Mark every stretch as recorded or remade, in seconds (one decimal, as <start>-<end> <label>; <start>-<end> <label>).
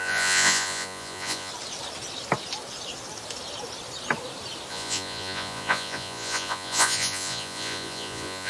0.0-1.5 remade; 1.5-4.7 recorded; 4.7-8.5 remade